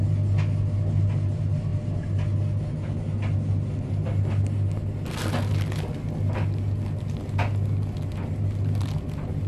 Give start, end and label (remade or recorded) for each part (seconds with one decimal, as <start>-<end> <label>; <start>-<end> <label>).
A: 0.0-9.5 recorded